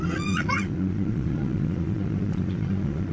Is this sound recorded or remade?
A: remade